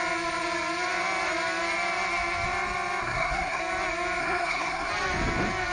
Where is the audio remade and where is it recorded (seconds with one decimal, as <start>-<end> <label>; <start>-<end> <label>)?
0.0-3.0 recorded; 3.0-3.6 remade; 3.6-4.2 recorded; 4.2-4.9 remade; 4.9-5.7 recorded